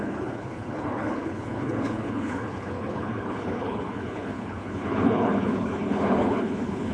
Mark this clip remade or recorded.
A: remade